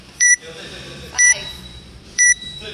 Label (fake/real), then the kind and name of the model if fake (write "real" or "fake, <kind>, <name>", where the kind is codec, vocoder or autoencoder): fake, vocoder, BigVGAN v2